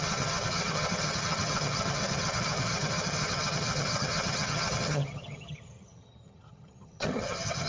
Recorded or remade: remade